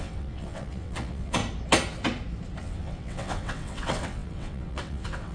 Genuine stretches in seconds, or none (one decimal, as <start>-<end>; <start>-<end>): 1.4-2.6